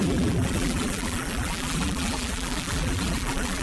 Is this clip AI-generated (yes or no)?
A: yes